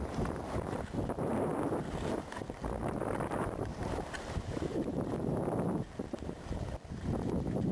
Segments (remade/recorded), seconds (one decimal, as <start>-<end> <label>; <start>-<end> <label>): 0.0-7.7 remade